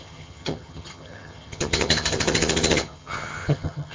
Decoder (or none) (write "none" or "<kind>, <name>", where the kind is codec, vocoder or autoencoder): vocoder, HiFi-GAN